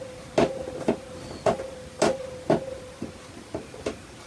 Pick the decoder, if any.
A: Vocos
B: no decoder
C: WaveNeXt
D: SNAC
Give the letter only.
B